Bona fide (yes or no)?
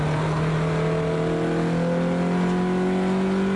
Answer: yes